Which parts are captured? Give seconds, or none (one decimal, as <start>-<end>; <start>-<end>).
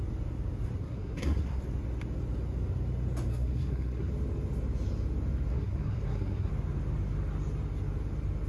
0.0-0.8; 1.6-3.3; 4.1-5.5; 6.5-8.5